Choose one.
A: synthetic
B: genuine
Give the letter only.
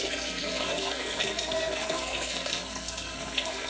A